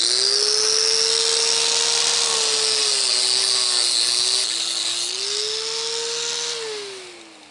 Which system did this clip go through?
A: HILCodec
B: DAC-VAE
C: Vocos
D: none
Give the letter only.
D